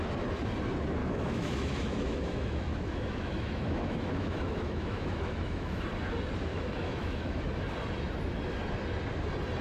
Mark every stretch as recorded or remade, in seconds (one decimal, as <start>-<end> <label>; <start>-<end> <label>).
0.0-1.0 recorded; 1.0-5.8 remade; 5.8-6.5 recorded; 6.5-7.4 remade; 7.4-9.6 recorded